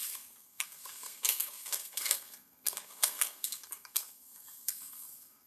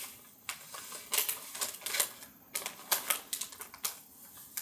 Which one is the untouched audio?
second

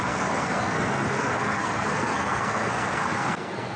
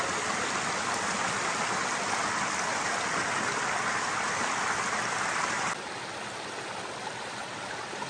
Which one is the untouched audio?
second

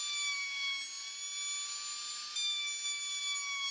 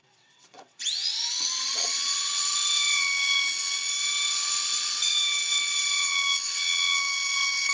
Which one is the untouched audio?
first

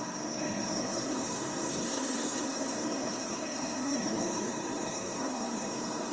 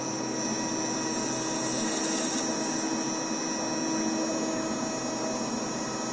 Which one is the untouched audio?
second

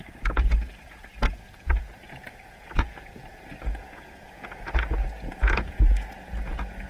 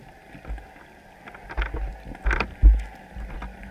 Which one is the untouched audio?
second